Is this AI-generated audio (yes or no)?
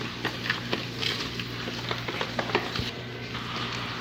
no